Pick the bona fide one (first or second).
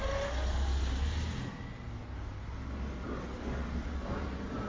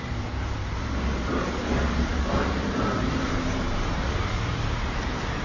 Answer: first